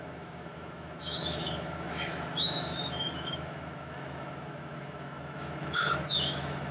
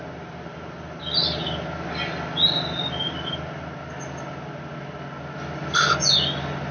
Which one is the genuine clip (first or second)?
second